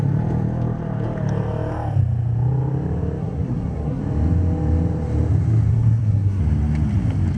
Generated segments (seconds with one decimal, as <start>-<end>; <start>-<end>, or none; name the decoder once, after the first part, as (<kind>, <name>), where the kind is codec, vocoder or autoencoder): 3.2-4.0 (codec, SNAC); 5.7-6.4